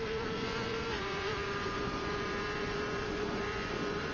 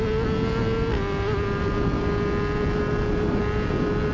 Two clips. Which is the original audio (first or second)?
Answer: second